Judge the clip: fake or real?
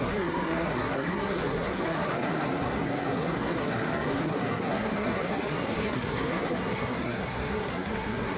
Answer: fake